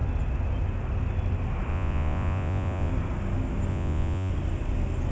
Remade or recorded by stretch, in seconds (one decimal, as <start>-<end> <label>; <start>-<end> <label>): 0.0-1.7 recorded; 1.7-2.9 remade; 2.9-3.7 recorded; 3.7-4.3 remade; 4.3-5.1 recorded